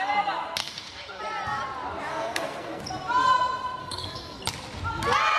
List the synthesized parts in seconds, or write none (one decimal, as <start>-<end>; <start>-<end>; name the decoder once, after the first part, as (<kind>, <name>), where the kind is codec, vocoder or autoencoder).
0.6-1.2 (codec, SNAC); 2.1-2.8; 3.8-4.4